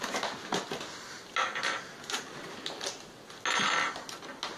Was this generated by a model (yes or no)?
no